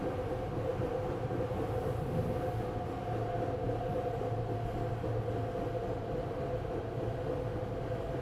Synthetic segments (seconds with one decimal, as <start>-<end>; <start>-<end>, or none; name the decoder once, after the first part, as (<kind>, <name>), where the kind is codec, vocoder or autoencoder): none